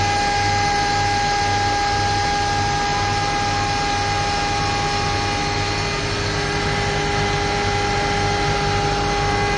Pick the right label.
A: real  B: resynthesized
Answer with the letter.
A